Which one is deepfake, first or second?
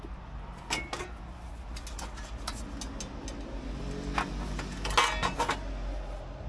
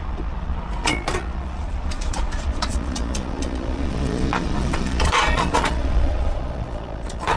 second